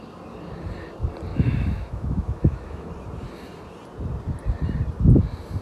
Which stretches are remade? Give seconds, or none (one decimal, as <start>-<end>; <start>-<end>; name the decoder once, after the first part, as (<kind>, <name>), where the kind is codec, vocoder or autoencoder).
1.3-2.9 (autoencoder, DAC-VAE)

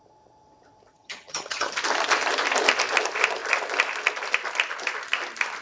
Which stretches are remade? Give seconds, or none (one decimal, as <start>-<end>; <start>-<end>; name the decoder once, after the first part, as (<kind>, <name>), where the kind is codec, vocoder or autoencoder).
0.9-1.7 (vocoder, HiFi-GAN)

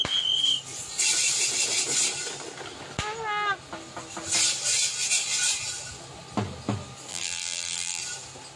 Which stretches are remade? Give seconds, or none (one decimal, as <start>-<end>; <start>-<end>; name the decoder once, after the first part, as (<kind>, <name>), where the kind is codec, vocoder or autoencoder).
7.1-8.0 (vocoder, BigVGAN v2)

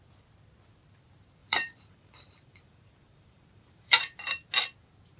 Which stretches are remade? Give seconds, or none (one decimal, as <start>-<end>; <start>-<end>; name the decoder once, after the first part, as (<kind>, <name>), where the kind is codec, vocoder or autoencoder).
1.4-4.5 (vocoder, BigVGAN v2)

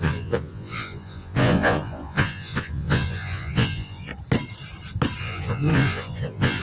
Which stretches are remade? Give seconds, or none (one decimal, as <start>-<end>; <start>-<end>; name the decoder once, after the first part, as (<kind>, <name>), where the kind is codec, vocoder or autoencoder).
0.0-4.1 (vocoder, Vocos); 5.2-6.6

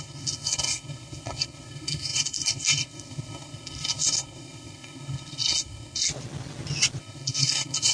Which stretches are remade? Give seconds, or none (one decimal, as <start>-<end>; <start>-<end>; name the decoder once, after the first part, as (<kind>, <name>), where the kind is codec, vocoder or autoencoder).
0.0-6.1 (codec, SNAC); 7.0-7.9

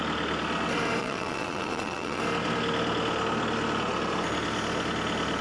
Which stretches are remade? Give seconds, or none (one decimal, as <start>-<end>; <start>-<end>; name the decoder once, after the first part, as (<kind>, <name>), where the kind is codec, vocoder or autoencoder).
1.0-2.2 (vocoder, WaveNeXt)